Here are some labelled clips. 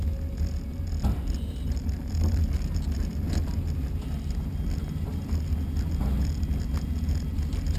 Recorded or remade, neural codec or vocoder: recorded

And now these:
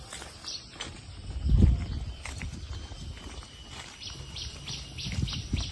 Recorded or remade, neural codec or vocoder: recorded